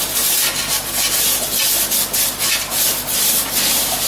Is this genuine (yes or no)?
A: yes